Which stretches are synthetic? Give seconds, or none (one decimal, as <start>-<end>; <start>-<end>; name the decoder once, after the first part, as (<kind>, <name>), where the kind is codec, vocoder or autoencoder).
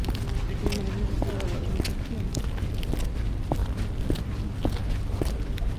none